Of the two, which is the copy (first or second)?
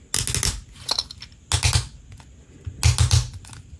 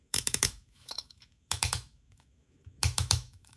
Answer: second